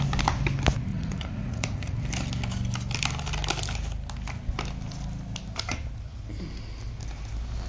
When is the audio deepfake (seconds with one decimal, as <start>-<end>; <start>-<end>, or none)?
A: 0.9-2.0